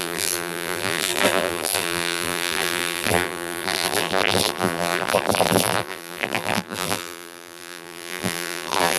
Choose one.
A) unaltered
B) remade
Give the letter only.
B